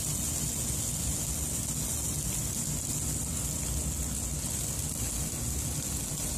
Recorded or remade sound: recorded